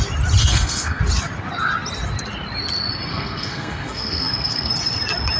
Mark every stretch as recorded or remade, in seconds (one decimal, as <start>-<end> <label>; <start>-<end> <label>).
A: 0.0-0.4 recorded; 0.4-1.0 remade; 1.0-3.1 recorded; 3.1-4.7 remade; 4.7-5.4 recorded